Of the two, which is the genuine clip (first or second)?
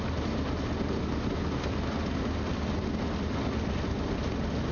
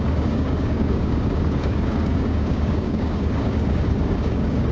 first